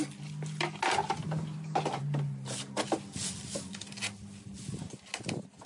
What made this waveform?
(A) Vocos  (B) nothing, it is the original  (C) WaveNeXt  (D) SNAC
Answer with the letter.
B